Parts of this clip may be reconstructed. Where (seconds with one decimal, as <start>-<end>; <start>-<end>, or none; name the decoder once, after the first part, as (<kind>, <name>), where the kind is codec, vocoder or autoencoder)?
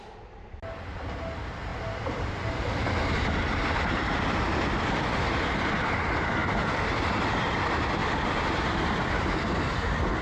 none